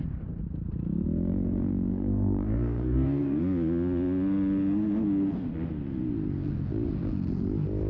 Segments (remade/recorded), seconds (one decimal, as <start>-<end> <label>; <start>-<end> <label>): 0.0-1.9 recorded; 1.9-3.4 remade; 3.4-7.9 recorded